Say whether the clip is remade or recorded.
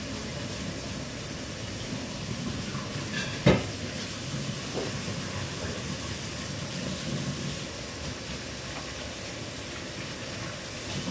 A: recorded